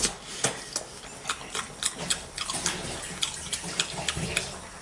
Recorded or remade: recorded